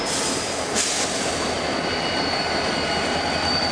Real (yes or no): yes